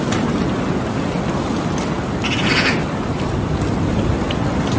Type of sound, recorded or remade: recorded